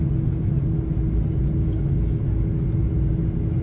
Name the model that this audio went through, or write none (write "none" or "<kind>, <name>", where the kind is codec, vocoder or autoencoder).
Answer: none